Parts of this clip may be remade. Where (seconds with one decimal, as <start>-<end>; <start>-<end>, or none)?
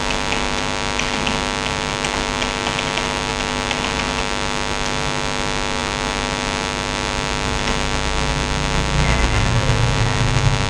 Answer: none